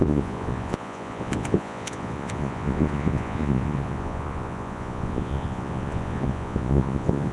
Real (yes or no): no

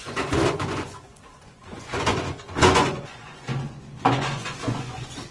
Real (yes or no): no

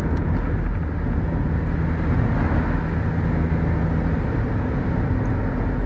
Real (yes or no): yes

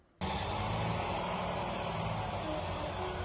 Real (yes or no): yes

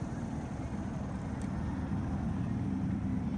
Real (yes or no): yes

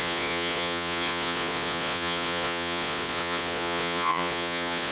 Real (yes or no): no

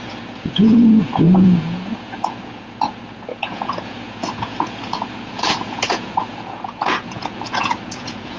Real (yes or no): no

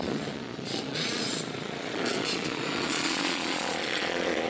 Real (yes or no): no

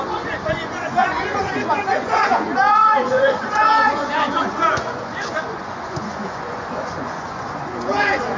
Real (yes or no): no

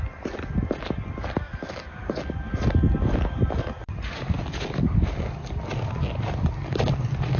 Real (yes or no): yes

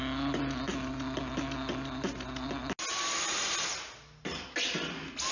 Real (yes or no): yes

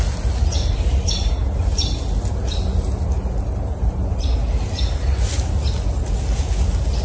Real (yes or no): yes